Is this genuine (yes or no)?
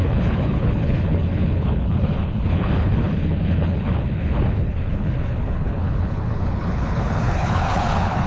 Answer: no